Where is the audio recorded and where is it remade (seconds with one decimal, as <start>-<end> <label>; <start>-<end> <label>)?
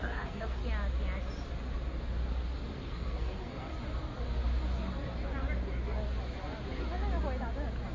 0.0-0.6 remade; 0.6-2.7 recorded; 2.7-3.7 remade; 3.7-7.9 recorded